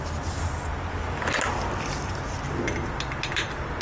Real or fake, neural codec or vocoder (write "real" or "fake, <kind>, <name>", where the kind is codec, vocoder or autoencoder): real